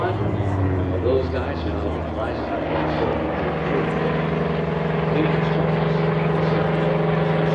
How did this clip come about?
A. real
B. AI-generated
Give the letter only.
A